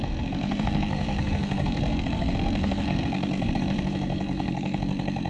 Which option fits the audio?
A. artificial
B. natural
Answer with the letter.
A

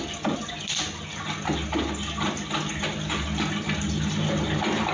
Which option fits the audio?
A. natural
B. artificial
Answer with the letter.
A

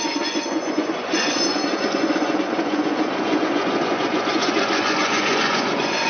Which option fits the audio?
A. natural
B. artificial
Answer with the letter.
B